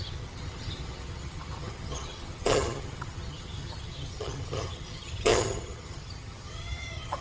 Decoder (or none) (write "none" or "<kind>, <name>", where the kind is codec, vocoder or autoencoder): vocoder, HiFi-GAN